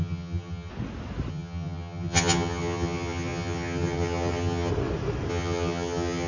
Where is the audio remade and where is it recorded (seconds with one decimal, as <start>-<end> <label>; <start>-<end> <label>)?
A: 0.0-0.7 remade; 0.7-1.3 recorded; 1.3-4.7 remade; 4.7-5.3 recorded; 5.3-6.3 remade